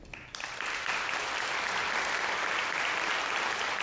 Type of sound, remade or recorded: recorded